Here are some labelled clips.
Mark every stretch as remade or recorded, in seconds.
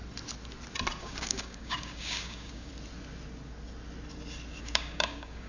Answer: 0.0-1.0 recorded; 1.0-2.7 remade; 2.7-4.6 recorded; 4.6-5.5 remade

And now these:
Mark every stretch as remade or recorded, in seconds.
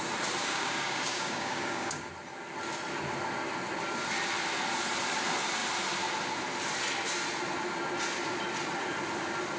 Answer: 0.0-0.4 recorded; 0.4-2.1 remade; 2.1-9.6 recorded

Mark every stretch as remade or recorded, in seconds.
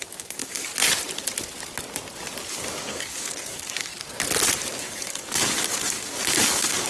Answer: 0.0-0.7 remade; 0.7-2.5 recorded; 2.5-3.9 remade; 3.9-4.7 recorded; 4.7-6.9 remade